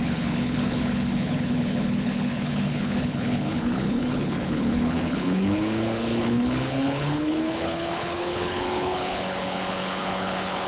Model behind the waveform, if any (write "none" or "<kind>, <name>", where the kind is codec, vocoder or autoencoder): codec, HILCodec